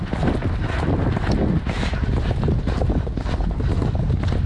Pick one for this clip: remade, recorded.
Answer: recorded